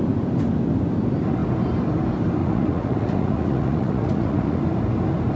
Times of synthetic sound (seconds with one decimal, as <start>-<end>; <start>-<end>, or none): 2.4-4.6